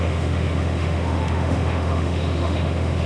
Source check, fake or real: fake